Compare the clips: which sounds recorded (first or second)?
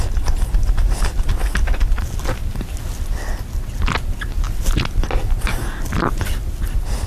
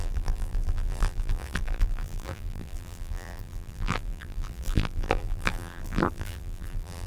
first